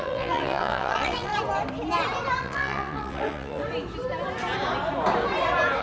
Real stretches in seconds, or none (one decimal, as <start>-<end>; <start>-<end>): 1.3-2.4; 3.6-5.8